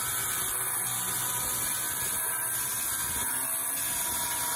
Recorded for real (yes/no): yes